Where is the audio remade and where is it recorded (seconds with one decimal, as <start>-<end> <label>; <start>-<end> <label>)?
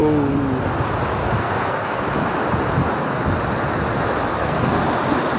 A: 0.0-1.2 recorded; 1.2-2.0 remade; 2.0-4.3 recorded; 4.3-4.8 remade; 4.8-5.4 recorded